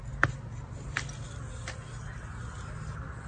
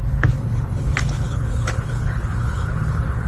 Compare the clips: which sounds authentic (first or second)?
first